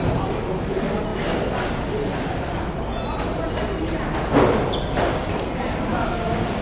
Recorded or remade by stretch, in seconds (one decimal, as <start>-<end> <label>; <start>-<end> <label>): 0.0-5.9 recorded; 5.9-6.6 remade